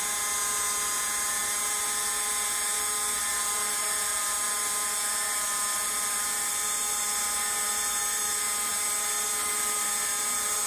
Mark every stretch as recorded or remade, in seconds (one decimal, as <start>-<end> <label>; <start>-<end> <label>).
0.0-10.7 recorded